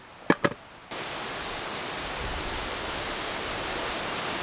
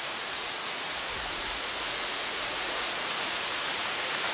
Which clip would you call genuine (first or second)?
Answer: first